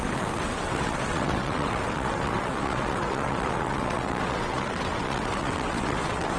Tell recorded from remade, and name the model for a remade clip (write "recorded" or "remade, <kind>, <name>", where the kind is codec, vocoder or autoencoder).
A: remade, vocoder, WaveNeXt